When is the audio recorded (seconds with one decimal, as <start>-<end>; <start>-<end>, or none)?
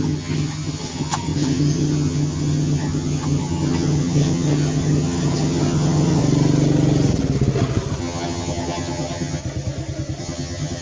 6.2-8.0; 9.4-10.2